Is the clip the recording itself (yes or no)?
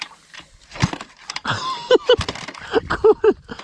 yes